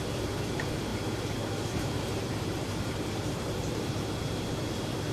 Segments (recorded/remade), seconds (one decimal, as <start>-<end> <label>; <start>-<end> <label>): 0.0-0.9 recorded; 0.9-4.0 remade; 4.0-5.1 recorded